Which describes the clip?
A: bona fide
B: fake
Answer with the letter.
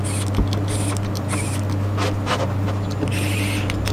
A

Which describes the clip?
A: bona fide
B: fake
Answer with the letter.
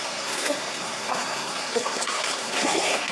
B